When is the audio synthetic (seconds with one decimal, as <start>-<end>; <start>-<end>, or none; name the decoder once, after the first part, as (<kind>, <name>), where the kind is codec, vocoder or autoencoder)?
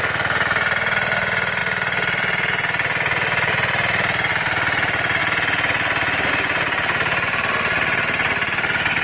0.0-5.2 (vocoder, BigVGAN v2); 6.3-9.0